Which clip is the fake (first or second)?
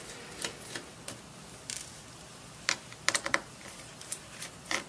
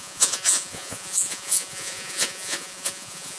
second